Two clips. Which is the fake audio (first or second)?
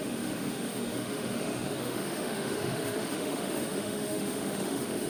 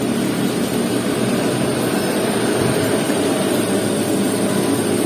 first